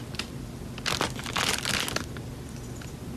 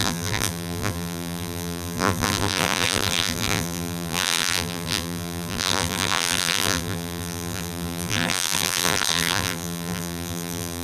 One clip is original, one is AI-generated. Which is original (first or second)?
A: first